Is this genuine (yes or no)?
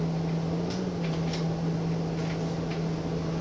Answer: yes